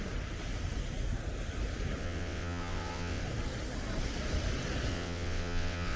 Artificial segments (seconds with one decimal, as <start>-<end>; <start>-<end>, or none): 2.0-3.2; 4.9-6.0